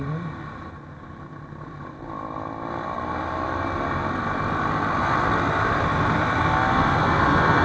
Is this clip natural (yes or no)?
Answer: yes